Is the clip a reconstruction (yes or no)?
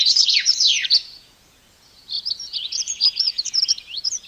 yes